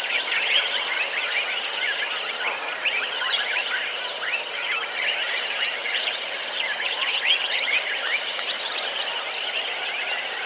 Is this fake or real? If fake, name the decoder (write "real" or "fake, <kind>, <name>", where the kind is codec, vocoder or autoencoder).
fake, vocoder, BigVGAN v2